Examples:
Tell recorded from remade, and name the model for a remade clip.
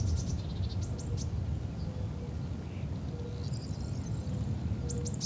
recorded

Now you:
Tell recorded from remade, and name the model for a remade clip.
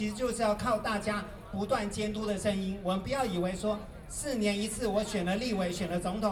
recorded